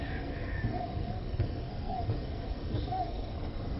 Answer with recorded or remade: remade